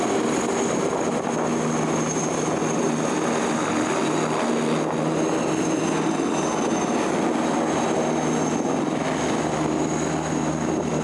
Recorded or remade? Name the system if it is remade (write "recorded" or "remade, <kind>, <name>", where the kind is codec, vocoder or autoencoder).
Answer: recorded